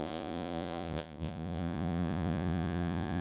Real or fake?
fake